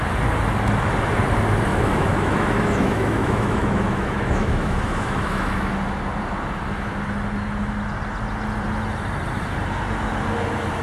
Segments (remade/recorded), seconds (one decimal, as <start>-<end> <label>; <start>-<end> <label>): 0.0-1.7 recorded; 1.7-5.7 remade; 5.7-10.8 recorded